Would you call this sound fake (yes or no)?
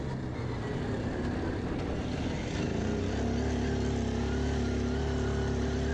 no